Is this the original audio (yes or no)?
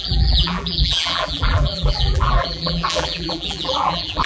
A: no